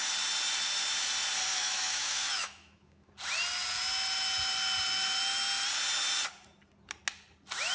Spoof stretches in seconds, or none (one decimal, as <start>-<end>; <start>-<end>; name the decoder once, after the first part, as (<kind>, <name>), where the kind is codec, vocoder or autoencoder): 1.5-3.1 (autoencoder, DAC-VAE)